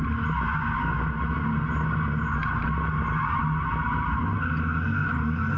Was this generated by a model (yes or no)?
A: no